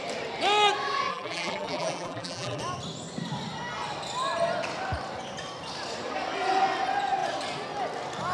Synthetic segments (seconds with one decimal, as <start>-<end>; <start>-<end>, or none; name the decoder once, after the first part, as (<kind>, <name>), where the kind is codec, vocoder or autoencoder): 1.1-2.6 (vocoder, BigVGAN v2)